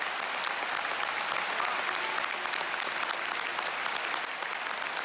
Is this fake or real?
real